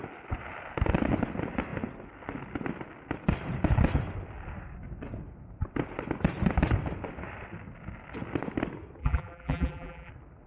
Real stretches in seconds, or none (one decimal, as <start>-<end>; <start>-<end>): 0.0-9.0; 10.1-10.5